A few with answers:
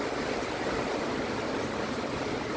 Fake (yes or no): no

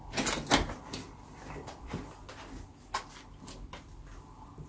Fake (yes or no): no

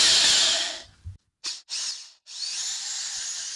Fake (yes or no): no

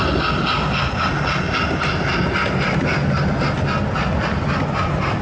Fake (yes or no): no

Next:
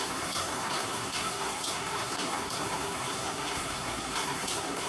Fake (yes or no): yes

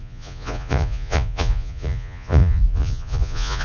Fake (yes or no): yes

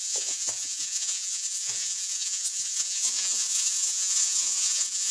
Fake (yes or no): yes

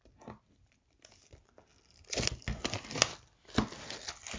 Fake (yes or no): no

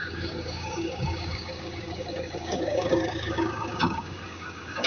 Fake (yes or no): yes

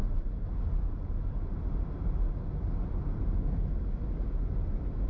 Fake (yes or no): no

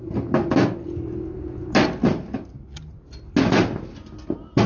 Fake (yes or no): no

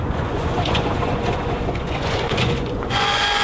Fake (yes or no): yes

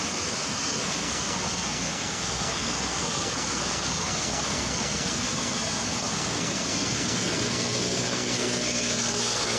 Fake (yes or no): yes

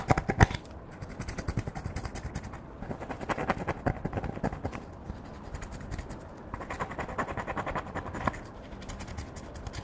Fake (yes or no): no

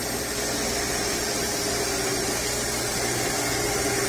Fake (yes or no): no